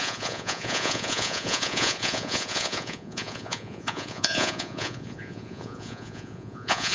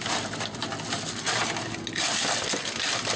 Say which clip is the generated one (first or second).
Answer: first